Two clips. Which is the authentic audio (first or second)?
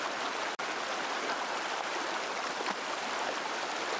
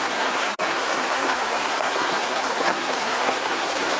first